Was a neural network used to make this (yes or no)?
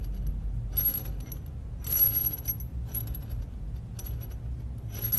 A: no